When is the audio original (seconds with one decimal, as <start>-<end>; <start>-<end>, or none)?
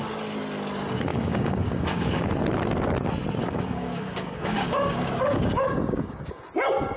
0.0-1.1; 2.2-3.4; 6.4-7.0